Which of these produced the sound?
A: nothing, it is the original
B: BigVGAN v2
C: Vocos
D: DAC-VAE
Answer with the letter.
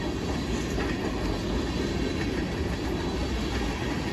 A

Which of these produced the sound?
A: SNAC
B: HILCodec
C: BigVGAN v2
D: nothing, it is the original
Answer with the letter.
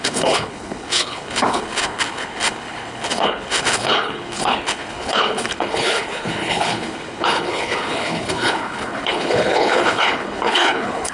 B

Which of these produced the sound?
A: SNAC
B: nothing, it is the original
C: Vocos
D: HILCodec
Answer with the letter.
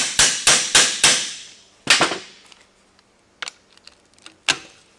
B